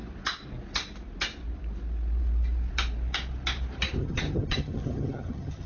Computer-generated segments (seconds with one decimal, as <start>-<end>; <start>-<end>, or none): 4.0-5.7